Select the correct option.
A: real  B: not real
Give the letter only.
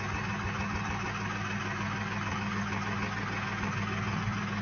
A